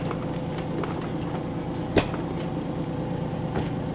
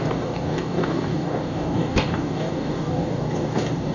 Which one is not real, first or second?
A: second